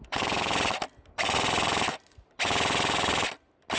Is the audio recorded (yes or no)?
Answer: yes